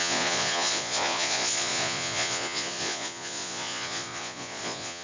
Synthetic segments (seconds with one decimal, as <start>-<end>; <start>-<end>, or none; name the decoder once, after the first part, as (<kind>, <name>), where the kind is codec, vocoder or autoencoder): 0.0-5.0 (vocoder, Vocos)